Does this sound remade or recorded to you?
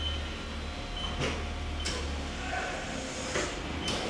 recorded